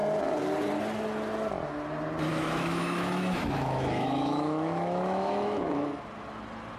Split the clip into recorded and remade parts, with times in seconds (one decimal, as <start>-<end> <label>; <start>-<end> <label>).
0.0-2.3 recorded; 2.3-6.0 remade; 6.0-6.8 recorded